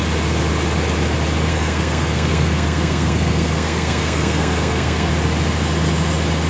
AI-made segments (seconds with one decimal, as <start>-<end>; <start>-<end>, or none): 1.5-5.1